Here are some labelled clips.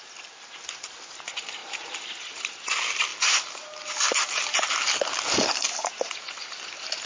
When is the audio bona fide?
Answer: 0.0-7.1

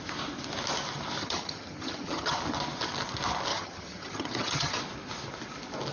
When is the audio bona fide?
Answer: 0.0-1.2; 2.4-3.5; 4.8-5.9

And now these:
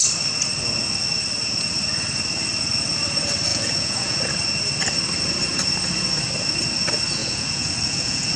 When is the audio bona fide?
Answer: 0.0-3.5; 4.2-7.2

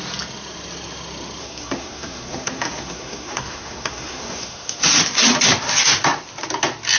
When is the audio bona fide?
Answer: 0.0-1.4; 4.8-7.0

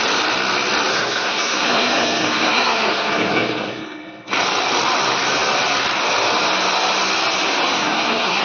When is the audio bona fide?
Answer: 0.0-0.9; 4.3-7.8

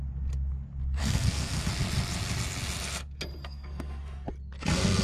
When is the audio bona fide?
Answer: 0.0-1.0; 1.7-3.4; 4.0-5.0